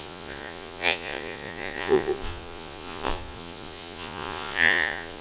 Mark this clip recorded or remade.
remade